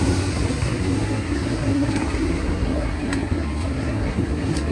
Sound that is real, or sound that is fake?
fake